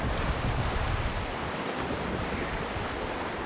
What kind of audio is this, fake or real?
real